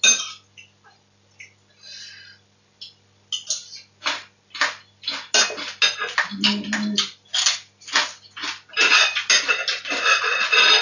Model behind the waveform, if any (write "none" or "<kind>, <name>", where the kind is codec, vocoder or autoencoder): none